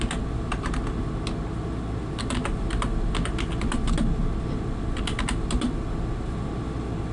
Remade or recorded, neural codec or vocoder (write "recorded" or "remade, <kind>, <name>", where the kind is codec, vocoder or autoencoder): recorded